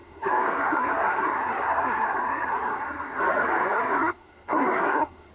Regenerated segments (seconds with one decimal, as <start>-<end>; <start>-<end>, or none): 0.0-3.2; 3.6-5.3